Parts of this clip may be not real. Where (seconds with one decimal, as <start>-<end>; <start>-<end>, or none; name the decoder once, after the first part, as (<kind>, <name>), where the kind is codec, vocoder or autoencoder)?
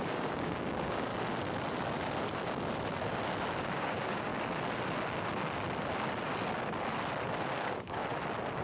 0.0-1.1 (codec, DAC); 3.6-4.3; 7.5-8.0